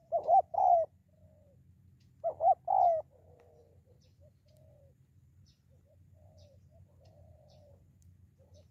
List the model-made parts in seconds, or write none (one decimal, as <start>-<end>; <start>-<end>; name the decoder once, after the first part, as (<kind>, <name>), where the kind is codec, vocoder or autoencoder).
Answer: 0.6-1.0 (vocoder, BigVGAN v2); 3.8-8.7